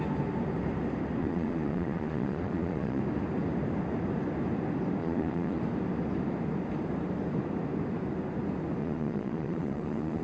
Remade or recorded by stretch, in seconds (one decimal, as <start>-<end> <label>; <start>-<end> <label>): 0.0-1.2 recorded; 1.2-3.0 remade; 3.0-5.0 recorded; 5.0-5.6 remade; 5.6-8.8 recorded; 8.8-10.2 remade